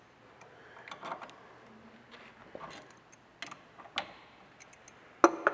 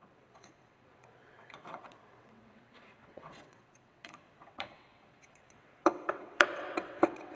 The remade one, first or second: second